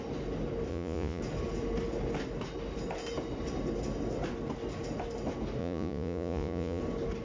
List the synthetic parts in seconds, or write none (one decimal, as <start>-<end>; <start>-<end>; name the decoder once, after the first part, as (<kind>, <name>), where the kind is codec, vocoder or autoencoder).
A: 0.7-1.2 (vocoder, Vocos); 5.6-6.8